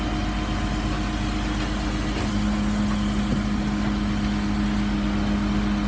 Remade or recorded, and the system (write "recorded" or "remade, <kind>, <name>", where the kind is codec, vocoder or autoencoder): recorded